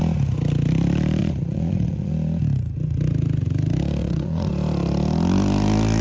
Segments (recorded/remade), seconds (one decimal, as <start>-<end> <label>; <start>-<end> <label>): 0.0-1.2 recorded; 1.2-2.1 remade; 2.1-4.0 recorded; 4.0-4.5 remade; 4.5-6.0 recorded